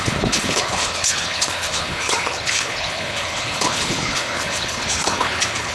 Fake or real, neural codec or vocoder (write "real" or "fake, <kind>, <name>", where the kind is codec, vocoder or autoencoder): fake, codec, HILCodec